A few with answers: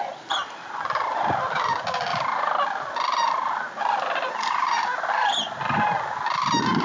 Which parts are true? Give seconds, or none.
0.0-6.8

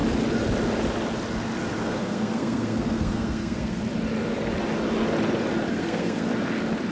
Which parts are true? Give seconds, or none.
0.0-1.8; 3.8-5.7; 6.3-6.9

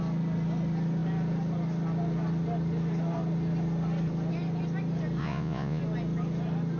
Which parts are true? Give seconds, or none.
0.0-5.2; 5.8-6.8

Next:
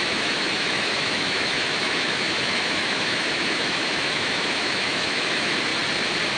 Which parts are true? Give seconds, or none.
5.7-6.4

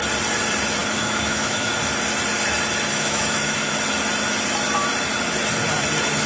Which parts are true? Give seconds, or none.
0.0-0.8; 1.7-2.9; 3.7-6.3